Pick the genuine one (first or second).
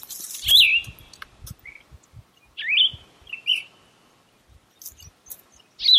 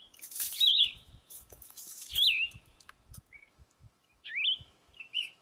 first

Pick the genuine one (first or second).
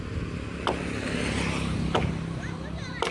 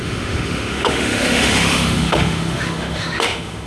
first